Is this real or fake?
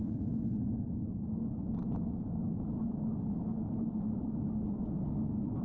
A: real